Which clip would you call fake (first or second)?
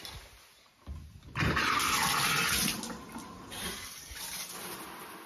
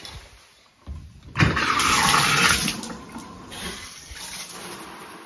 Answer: second